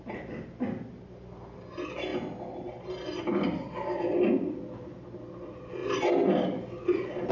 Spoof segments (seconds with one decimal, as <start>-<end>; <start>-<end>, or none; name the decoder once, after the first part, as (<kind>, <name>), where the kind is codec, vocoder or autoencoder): none